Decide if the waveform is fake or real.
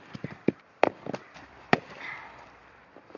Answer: fake